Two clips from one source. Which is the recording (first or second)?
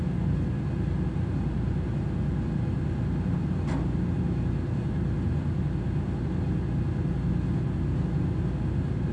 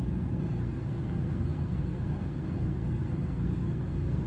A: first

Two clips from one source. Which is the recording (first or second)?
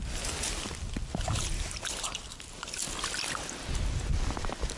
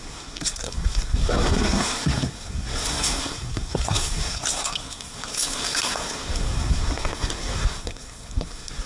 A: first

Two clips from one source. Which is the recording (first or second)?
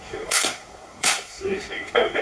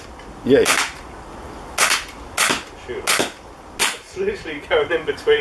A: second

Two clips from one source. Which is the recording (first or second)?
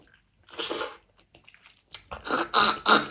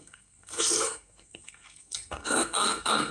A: first